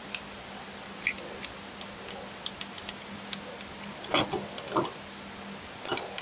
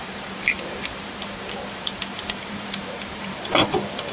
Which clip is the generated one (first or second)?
second